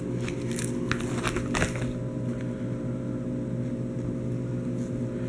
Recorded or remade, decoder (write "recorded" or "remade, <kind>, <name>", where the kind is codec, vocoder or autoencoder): recorded